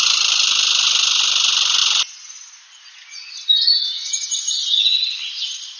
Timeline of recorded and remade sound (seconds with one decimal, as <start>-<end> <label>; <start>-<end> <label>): 0.0-5.8 recorded